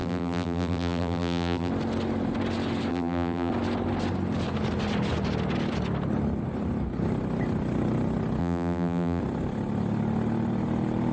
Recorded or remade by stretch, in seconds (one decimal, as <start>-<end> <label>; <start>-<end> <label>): 0.0-1.7 remade; 1.7-2.9 recorded; 2.9-3.5 remade; 3.5-8.4 recorded; 8.4-9.2 remade; 9.2-11.1 recorded